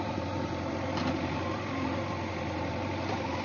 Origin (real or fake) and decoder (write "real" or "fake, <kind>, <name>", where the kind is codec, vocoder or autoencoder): fake, vocoder, BigVGAN v2